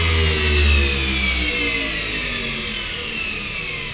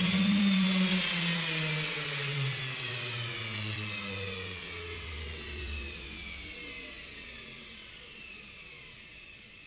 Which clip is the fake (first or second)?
second